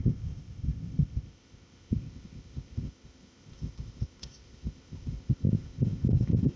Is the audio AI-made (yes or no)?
yes